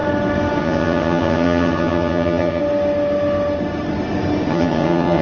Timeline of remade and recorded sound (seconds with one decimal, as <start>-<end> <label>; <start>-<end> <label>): 0.0-0.6 recorded; 0.6-2.6 remade; 2.6-4.5 recorded; 4.5-5.2 remade

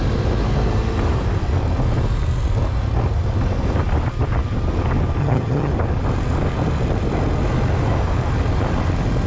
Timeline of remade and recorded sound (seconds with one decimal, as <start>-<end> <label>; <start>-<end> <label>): 0.0-5.2 recorded; 5.2-5.7 remade; 5.7-9.3 recorded

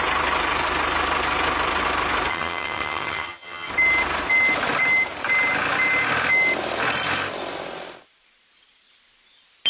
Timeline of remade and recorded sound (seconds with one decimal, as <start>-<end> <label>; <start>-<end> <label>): 0.0-2.3 recorded; 2.3-3.7 remade; 3.7-9.7 recorded

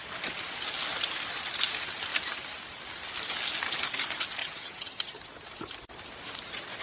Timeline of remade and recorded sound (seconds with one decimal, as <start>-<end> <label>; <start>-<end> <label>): 0.0-4.4 recorded; 4.4-5.2 remade; 5.2-6.8 recorded

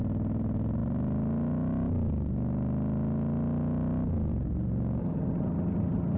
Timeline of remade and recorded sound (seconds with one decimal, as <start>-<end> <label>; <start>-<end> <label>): 0.0-5.0 recorded; 5.0-6.2 remade